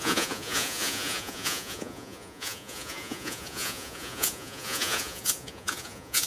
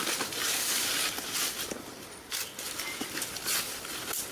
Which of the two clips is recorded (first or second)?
second